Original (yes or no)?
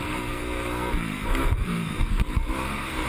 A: no